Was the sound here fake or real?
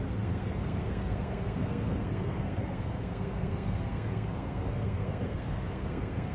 fake